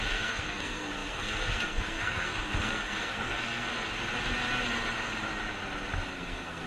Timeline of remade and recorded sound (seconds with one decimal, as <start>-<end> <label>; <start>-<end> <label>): 0.0-3.7 remade; 3.7-6.1 recorded; 6.1-6.7 remade

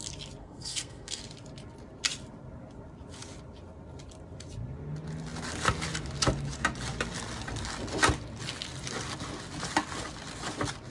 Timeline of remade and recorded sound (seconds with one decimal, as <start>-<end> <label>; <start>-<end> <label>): 0.0-0.4 recorded; 0.4-1.2 remade; 1.2-10.9 recorded